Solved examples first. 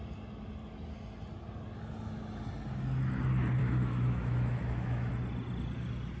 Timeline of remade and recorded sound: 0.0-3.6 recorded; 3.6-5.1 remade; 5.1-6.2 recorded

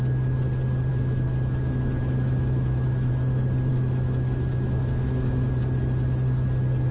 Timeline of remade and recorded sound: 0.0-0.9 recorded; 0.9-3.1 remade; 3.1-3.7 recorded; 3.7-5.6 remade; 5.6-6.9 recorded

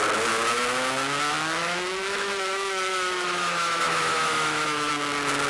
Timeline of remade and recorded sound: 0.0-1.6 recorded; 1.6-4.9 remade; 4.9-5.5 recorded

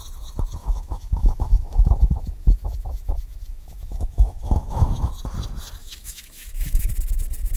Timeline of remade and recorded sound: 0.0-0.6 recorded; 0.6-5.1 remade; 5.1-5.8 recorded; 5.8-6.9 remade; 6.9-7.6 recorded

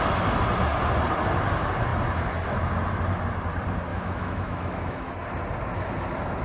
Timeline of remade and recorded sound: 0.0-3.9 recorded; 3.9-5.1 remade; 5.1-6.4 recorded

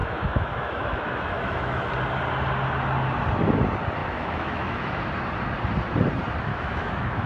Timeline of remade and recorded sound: 0.0-1.9 remade; 1.9-4.0 recorded; 4.0-5.0 remade; 5.0-6.5 recorded; 6.5-7.3 remade

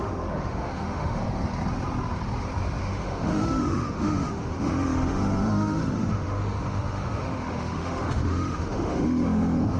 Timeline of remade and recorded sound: 0.0-1.2 remade; 1.2-2.8 recorded; 2.8-9.8 remade

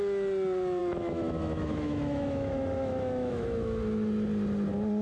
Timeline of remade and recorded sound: 0.0-0.8 recorded; 0.8-3.8 remade; 3.8-5.0 recorded